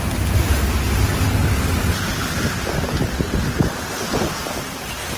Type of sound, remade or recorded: recorded